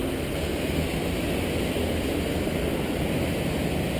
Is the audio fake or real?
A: real